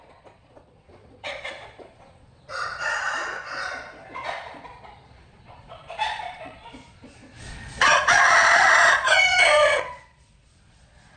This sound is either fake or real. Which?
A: fake